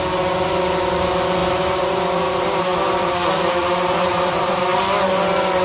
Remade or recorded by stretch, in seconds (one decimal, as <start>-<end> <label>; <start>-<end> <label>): 0.0-1.4 recorded; 1.4-4.8 remade; 4.8-5.6 recorded